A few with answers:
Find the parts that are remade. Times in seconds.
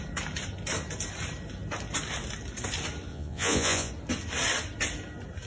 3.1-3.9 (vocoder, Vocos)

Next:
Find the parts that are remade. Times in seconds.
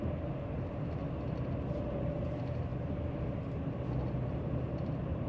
0.0-1.0 (vocoder, BigVGAN v2); 2.2-2.7; 4.6-5.3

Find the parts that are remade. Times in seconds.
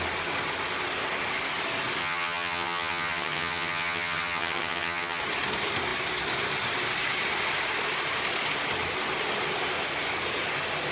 2.0-5.2 (vocoder, HiFi-GAN)